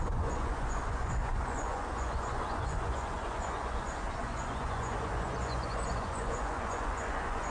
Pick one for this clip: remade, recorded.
remade